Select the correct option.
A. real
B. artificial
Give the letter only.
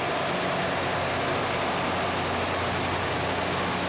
A